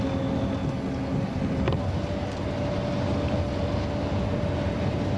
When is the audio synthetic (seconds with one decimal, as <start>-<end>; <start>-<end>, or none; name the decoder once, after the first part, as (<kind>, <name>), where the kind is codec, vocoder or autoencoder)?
none